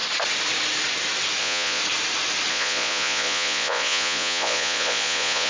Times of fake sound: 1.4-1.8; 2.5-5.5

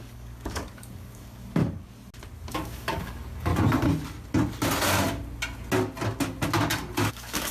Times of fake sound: 0.0-1.6; 2.5-3.5; 7.1-7.5

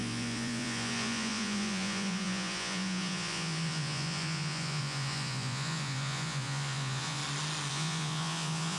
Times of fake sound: 0.0-7.2; 7.7-8.8